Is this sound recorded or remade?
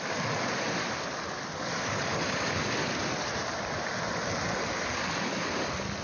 recorded